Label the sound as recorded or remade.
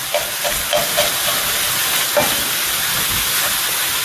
recorded